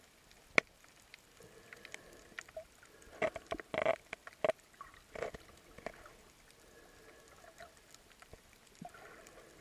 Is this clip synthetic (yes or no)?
no